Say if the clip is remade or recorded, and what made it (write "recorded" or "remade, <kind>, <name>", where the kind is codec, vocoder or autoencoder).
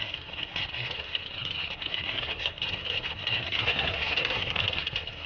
remade, codec, SNAC